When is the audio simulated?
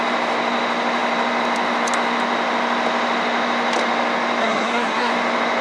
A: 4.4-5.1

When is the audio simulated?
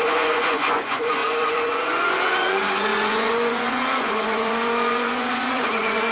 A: 0.0-6.1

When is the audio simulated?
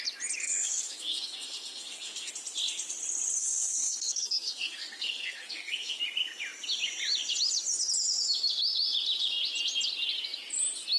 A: 0.4-2.3; 3.4-6.0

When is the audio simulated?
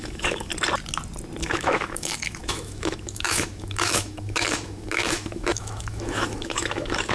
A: 0.0-0.5; 1.4-7.1